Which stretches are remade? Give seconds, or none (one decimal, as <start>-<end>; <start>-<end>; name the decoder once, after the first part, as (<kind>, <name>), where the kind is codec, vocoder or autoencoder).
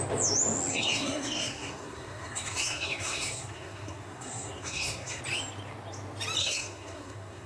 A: 0.7-5.2 (codec, SNAC); 6.4-7.5